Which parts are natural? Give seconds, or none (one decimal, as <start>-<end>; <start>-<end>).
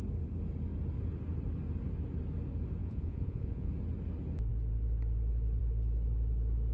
0.0-2.8; 3.7-6.7